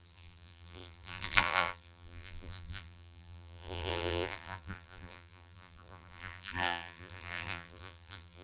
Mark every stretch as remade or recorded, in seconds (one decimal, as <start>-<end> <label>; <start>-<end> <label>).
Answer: 0.0-8.4 remade